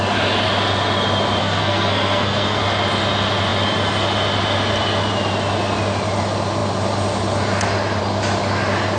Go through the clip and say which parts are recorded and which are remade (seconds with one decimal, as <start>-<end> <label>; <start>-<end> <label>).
0.0-1.4 recorded; 1.4-2.6 remade; 2.6-9.0 recorded